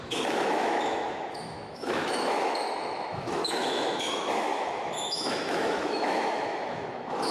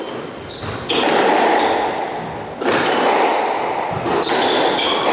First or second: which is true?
second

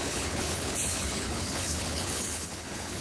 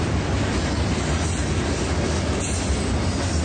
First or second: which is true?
second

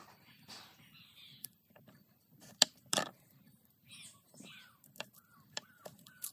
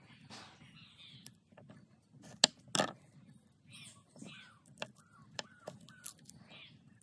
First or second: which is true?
second